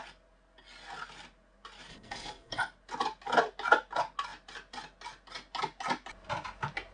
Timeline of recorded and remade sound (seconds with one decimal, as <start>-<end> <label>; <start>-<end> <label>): 0.0-1.9 recorded; 1.9-2.6 remade; 2.6-6.9 recorded